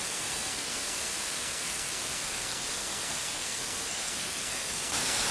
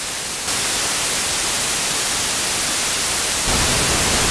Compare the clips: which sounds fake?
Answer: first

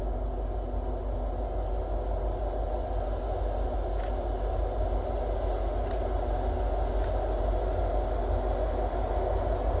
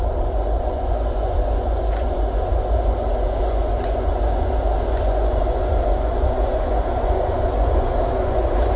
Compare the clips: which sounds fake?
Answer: second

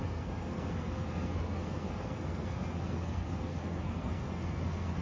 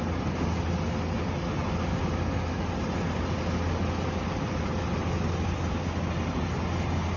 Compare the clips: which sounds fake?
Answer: first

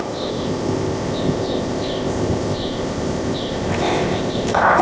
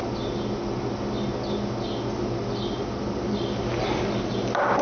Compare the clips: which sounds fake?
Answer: first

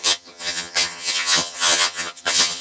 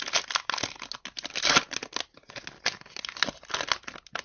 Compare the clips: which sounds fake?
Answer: first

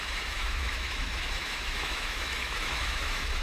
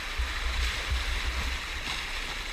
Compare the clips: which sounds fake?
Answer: first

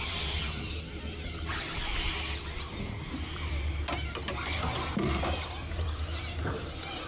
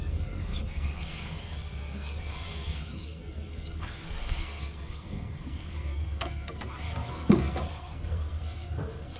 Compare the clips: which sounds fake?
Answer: second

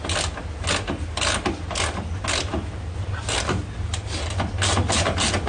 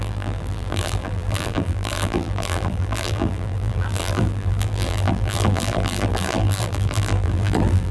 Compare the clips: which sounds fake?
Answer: second